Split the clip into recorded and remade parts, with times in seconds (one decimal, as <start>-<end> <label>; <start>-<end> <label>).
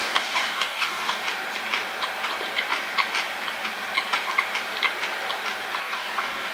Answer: 0.0-1.2 remade; 1.2-5.8 recorded; 5.8-6.5 remade